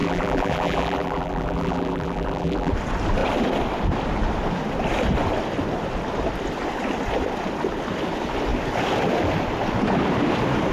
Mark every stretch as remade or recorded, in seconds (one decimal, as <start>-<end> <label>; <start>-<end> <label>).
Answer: 0.0-2.7 remade; 2.7-10.7 recorded